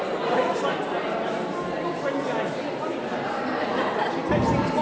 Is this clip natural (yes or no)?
yes